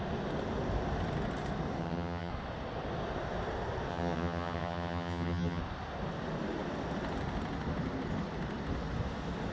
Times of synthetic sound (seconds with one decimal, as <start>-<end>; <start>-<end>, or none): 1.8-2.3; 3.9-5.6